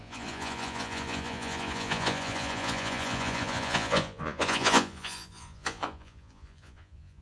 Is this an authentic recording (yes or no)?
no